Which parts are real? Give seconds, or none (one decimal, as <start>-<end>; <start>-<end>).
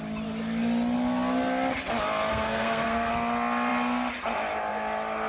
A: 0.0-2.3; 3.1-5.3